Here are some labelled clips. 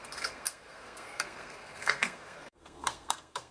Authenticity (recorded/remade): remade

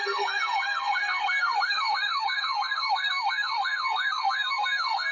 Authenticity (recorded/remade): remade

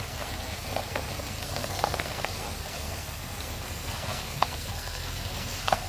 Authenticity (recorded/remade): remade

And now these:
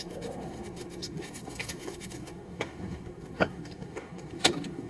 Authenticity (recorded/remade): remade